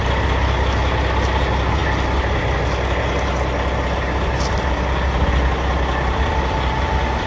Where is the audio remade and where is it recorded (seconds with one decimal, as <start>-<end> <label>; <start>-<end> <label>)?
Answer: 0.0-7.3 recorded